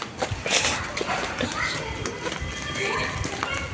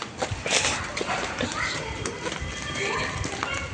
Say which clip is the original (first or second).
first